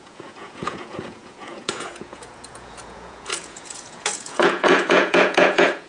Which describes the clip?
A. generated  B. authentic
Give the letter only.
A